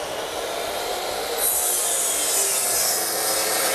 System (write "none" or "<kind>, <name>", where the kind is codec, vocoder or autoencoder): none